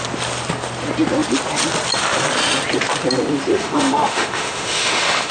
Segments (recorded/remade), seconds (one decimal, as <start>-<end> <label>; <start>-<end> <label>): 0.0-3.5 recorded; 3.5-5.3 remade